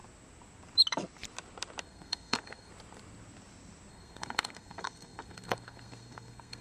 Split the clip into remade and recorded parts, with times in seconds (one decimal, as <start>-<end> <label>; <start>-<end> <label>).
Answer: 0.0-1.8 recorded; 1.8-2.7 remade; 2.7-3.9 recorded; 3.9-6.6 remade